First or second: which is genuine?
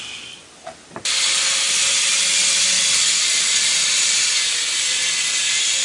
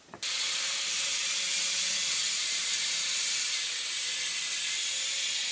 first